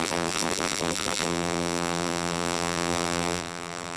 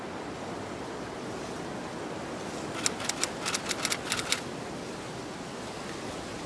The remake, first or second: first